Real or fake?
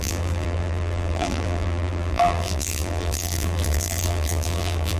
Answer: fake